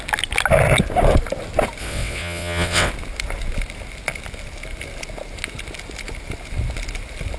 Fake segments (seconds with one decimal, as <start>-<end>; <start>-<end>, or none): 1.8-2.9